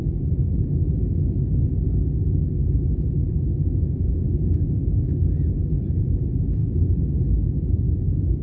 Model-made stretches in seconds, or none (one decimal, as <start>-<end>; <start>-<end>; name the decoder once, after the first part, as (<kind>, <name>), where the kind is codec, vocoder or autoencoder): 2.6-6.0 (autoencoder, DAC-VAE); 6.6-7.9